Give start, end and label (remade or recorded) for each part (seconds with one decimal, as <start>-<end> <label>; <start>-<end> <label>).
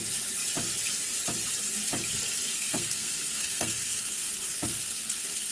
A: 0.0-2.5 recorded; 2.5-5.5 remade